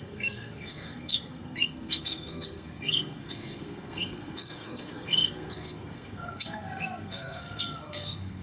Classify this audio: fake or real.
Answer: fake